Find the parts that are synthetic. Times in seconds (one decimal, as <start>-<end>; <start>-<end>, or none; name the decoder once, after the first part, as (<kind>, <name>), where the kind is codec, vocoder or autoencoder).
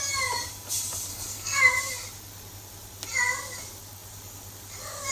1.1-1.6 (codec, SNAC)